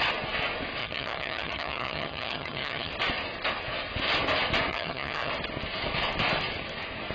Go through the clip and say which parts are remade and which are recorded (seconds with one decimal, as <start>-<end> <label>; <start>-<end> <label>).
0.0-0.8 recorded; 0.8-2.9 remade; 2.9-4.7 recorded; 4.7-5.3 remade; 5.3-7.1 recorded